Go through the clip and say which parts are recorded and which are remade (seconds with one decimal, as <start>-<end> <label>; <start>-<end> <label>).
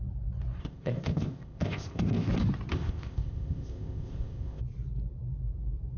0.0-0.6 recorded; 0.6-2.3 remade; 2.3-2.7 recorded; 2.7-4.6 remade; 4.6-6.0 recorded